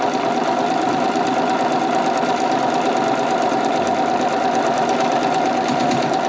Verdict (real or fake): real